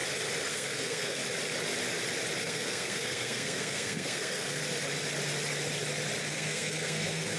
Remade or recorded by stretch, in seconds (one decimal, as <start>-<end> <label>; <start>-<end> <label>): 0.0-0.5 recorded; 0.5-1.2 remade; 1.2-2.4 recorded; 2.4-4.6 remade; 4.6-6.3 recorded; 6.3-7.4 remade